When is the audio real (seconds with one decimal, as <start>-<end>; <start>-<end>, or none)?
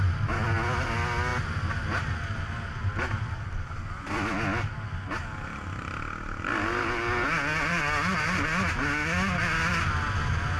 0.0-10.6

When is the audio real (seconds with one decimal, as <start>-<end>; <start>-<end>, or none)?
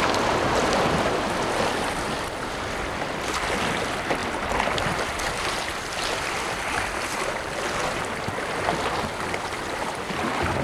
0.0-0.6; 1.2-10.6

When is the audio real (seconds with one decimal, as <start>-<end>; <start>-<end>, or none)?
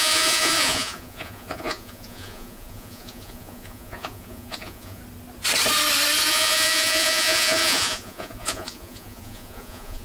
5.0-6.3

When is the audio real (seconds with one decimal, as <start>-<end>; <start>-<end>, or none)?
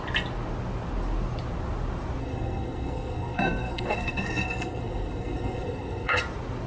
0.0-2.2; 6.2-6.7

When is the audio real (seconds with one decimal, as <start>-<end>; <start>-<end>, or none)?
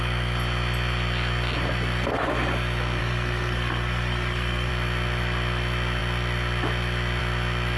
0.0-3.0; 4.7-7.8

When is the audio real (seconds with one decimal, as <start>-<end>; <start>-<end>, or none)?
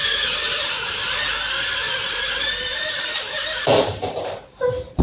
0.9-1.8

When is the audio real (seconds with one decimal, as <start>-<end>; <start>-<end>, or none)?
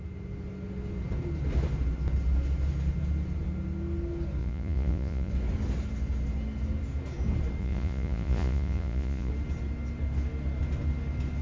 0.0-4.4; 5.3-7.6; 9.3-11.4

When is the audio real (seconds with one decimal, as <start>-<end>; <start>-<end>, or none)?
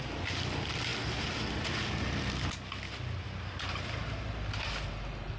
0.0-5.4